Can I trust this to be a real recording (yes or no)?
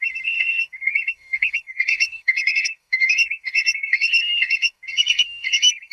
no